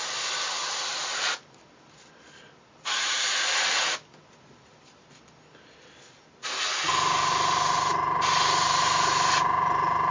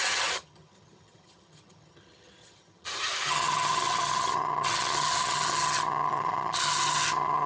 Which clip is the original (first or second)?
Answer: first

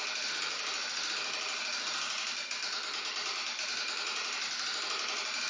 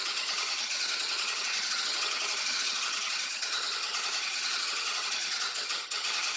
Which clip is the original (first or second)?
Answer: first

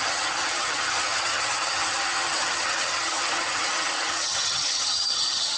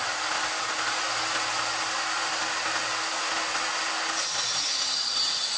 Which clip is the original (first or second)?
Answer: second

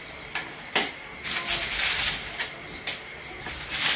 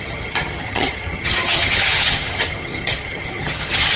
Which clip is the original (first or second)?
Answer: first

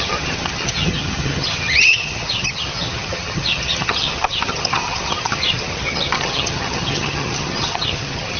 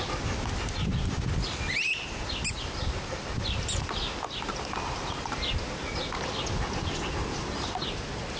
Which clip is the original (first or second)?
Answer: second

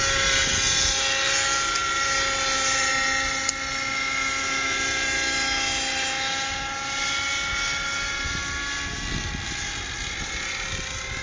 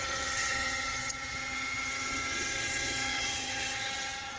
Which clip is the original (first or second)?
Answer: first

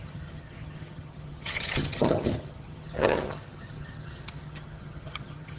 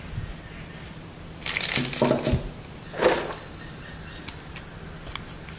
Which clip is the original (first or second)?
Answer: second